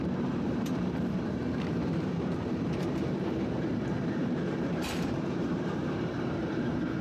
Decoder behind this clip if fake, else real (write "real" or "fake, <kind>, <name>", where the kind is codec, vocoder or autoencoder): fake, vocoder, BigVGAN v2